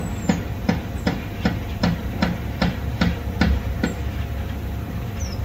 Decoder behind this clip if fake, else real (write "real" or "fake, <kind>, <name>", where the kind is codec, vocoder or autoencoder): fake, vocoder, BigVGAN v2